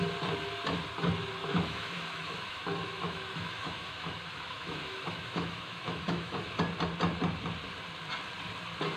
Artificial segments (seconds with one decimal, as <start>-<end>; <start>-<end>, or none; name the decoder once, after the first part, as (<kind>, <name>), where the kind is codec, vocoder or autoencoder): 1.4-6.6 (autoencoder, DAC-VAE)